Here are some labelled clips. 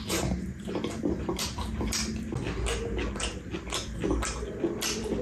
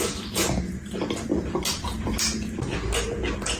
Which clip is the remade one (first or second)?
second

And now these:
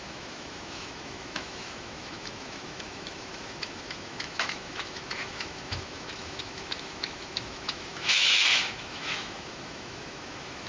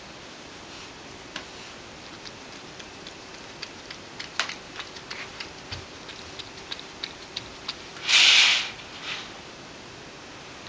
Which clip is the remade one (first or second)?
first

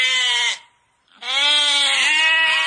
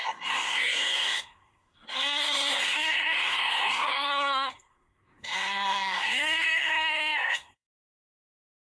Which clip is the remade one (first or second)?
second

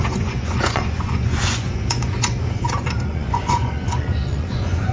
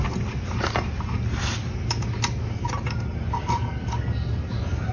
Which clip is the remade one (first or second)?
first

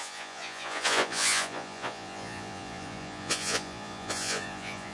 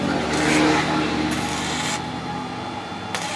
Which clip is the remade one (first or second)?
first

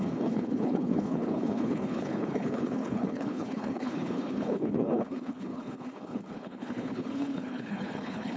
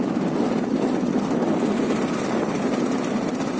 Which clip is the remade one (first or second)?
first